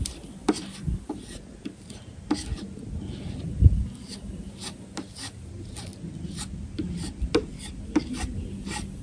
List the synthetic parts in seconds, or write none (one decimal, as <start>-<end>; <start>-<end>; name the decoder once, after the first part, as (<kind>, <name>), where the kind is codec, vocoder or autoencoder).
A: none